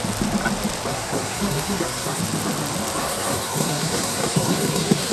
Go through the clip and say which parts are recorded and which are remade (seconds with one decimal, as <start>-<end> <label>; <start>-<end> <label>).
0.0-0.9 recorded; 0.9-2.2 remade; 2.2-3.0 recorded; 3.0-5.1 remade